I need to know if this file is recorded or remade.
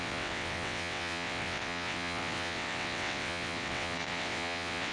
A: remade